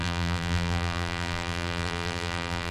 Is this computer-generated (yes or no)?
yes